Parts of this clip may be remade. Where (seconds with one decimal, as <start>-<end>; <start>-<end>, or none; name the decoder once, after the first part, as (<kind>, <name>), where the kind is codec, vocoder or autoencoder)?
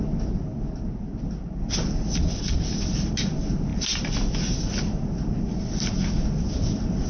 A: none